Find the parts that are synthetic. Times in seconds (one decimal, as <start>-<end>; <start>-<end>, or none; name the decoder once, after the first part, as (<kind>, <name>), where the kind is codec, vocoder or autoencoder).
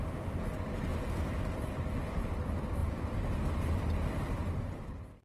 0.9-2.4 (vocoder, BigVGAN v2); 2.8-5.2